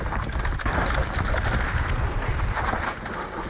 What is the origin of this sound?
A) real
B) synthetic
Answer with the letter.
A